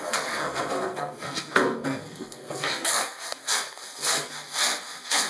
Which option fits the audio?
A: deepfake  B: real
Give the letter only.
A